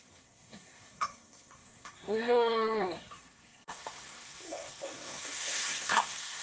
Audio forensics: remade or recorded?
remade